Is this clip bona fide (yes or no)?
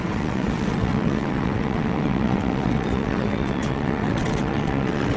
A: no